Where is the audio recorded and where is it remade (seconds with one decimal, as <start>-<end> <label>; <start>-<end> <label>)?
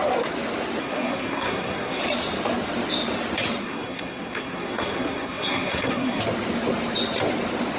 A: 0.0-0.8 recorded; 0.8-2.0 remade; 2.0-3.6 recorded; 3.6-6.2 remade; 6.2-7.8 recorded